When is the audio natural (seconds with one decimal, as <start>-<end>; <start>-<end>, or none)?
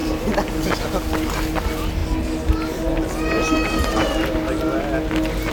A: 0.5-5.5